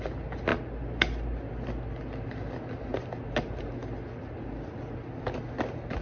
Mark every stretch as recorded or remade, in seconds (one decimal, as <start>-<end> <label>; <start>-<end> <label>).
0.0-6.0 recorded